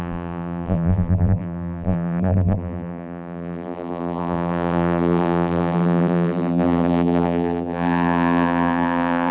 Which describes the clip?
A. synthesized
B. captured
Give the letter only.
A